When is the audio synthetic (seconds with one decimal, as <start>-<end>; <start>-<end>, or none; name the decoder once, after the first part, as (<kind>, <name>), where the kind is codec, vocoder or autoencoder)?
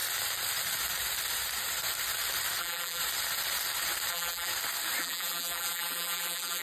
2.6-3.0 (vocoder, BigVGAN v2); 4.1-4.5; 5.0-6.6